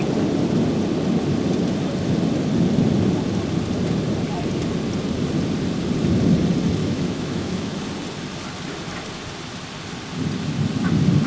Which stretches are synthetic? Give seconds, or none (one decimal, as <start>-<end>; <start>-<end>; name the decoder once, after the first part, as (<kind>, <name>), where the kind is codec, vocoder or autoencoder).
6.8-7.8 (autoencoder, DAC-VAE)